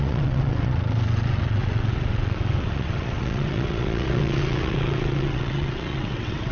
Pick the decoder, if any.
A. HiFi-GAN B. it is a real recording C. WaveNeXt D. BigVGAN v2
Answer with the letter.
C